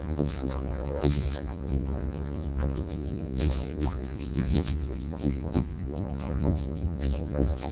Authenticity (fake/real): fake